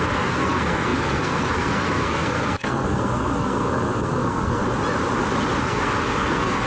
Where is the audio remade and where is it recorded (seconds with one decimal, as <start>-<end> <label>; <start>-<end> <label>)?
0.0-4.6 remade; 4.6-5.6 recorded; 5.6-6.7 remade